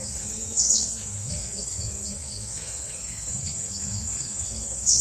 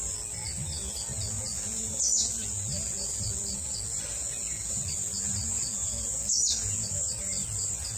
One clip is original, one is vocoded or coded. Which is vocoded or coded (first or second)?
first